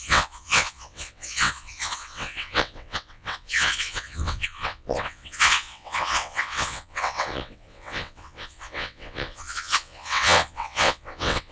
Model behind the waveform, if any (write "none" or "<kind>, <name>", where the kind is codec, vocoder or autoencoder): vocoder, WaveNeXt